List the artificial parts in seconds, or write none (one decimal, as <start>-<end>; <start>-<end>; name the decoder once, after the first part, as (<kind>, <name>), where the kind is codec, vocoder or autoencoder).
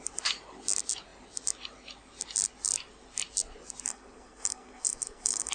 3.9-5.5 (codec, SNAC)